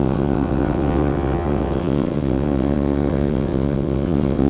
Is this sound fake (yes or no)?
yes